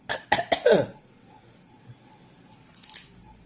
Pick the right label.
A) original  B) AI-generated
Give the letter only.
A